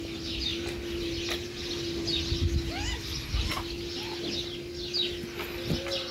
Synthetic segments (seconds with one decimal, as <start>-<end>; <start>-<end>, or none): none